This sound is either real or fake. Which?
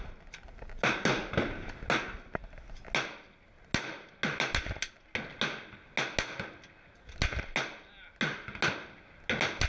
real